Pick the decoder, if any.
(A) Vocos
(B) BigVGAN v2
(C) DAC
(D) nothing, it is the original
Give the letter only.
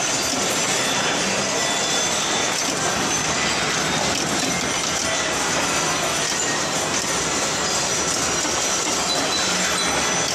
D